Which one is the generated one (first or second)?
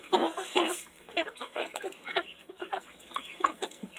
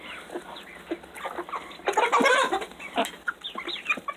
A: first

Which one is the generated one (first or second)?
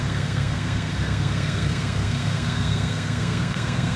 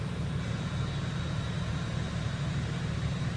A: first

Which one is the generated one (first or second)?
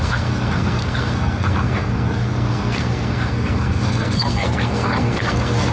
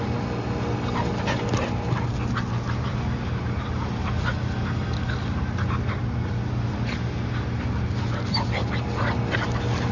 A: first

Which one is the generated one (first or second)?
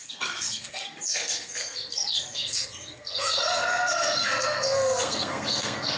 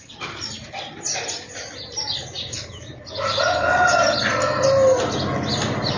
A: first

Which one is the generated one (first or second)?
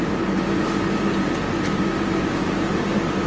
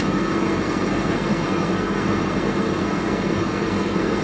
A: second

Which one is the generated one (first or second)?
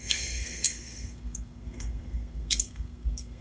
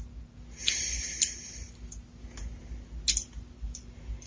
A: first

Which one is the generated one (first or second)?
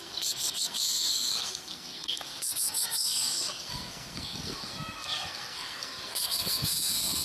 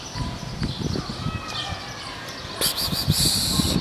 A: first